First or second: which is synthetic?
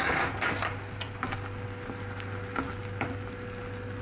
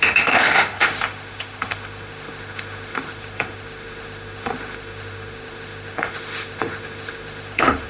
second